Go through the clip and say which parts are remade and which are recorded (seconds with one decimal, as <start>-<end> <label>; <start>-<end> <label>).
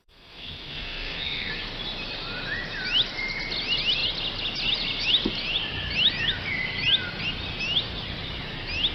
0.0-1.5 remade; 1.5-8.9 recorded